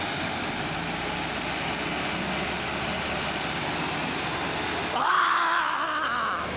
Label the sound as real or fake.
real